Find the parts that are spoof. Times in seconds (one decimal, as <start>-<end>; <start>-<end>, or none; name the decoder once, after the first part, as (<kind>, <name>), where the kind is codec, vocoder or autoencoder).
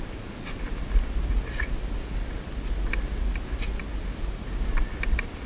0.0-1.3 (vocoder, BigVGAN v2); 4.6-5.5